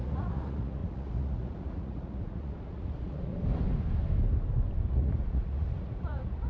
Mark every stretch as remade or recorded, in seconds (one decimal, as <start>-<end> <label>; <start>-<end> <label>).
0.0-3.3 remade; 3.3-4.9 recorded; 4.9-6.5 remade